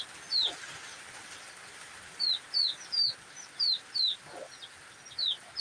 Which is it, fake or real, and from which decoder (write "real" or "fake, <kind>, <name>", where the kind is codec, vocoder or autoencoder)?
fake, vocoder, BigVGAN v2